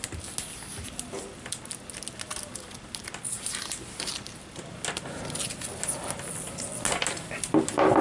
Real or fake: real